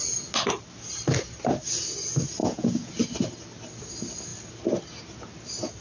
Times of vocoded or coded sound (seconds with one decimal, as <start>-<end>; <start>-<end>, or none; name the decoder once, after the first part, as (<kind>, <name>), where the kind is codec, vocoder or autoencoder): 2.4-2.9 (vocoder, Vocos)